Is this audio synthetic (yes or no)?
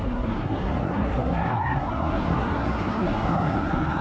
yes